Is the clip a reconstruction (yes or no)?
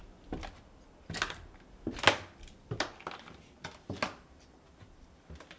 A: no